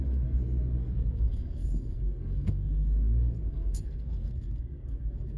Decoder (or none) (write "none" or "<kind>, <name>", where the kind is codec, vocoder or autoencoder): codec, SNAC